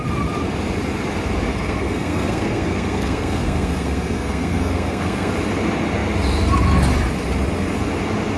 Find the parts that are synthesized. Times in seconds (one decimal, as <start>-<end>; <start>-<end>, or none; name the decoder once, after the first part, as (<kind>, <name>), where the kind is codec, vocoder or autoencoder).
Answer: 1.5-5.3 (codec, SNAC)